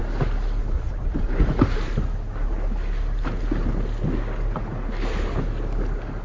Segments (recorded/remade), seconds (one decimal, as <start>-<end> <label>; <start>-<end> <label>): 0.0-0.6 recorded; 0.6-1.9 remade; 1.9-6.2 recorded